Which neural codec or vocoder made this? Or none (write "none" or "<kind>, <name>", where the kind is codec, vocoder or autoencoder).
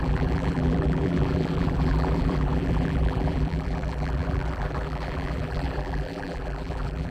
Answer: vocoder, BigVGAN v2